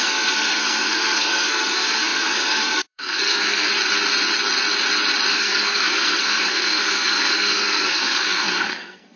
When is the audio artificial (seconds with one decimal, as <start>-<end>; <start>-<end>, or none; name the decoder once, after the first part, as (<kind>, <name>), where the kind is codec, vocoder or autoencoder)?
0.0-3.7 (codec, SNAC); 5.3-9.2